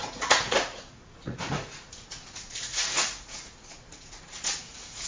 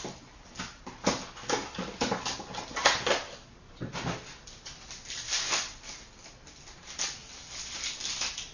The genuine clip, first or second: second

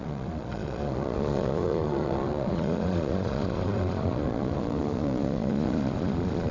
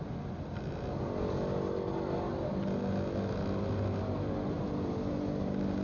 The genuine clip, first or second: second